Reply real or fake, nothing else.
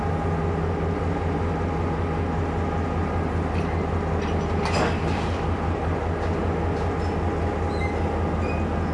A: real